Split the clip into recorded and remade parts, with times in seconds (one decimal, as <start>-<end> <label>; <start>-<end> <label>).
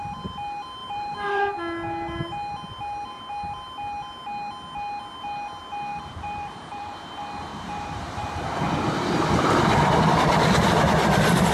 0.0-0.8 recorded; 0.8-1.4 remade; 1.4-5.9 recorded; 5.9-6.9 remade; 6.9-7.5 recorded; 7.5-8.4 remade; 8.4-11.5 recorded